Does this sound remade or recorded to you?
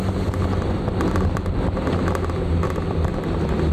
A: recorded